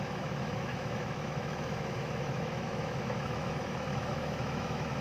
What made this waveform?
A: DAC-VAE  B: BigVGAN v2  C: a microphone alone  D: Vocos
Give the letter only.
A